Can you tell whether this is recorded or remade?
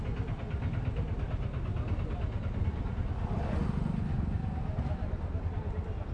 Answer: recorded